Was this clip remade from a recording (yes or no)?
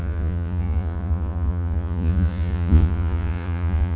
yes